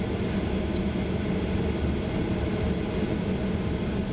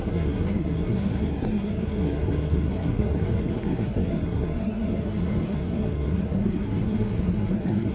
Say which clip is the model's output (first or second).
second